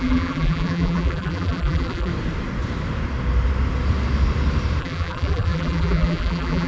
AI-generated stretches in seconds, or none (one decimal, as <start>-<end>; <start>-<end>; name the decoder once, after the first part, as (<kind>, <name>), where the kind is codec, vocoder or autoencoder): 0.0-2.1 (vocoder, BigVGAN v2); 4.8-6.7

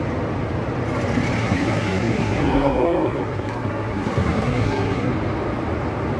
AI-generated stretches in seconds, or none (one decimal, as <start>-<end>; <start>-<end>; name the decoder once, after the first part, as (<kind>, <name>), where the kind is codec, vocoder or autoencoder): 1.4-5.1 (codec, SNAC)